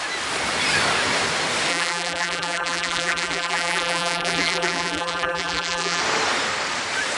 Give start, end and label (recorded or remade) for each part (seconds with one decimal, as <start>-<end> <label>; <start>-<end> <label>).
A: 0.0-1.7 recorded; 1.7-6.0 remade; 6.0-7.2 recorded